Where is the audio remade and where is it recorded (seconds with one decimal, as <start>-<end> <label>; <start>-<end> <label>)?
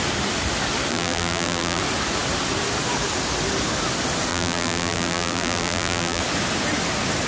0.0-0.9 recorded; 0.9-1.8 remade; 1.8-4.3 recorded; 4.3-6.2 remade; 6.2-7.3 recorded